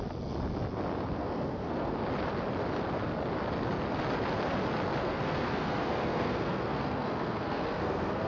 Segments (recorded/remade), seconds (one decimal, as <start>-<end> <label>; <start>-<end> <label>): 0.0-1.2 recorded; 1.2-1.9 remade; 1.9-5.0 recorded; 5.0-8.3 remade